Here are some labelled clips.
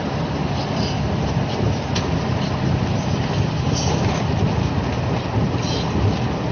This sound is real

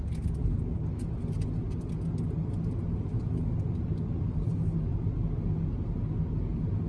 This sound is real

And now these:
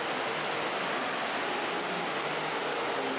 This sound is real